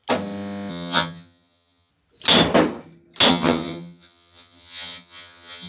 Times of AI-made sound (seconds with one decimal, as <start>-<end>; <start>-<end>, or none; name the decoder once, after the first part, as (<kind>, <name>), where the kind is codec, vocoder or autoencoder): 0.7-1.9 (vocoder, HiFi-GAN); 3.3-5.7